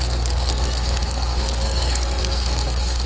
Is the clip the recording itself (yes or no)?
no